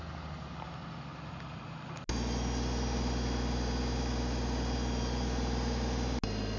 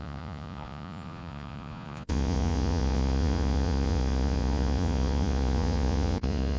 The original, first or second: first